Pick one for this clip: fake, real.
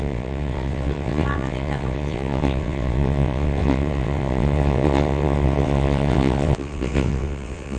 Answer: fake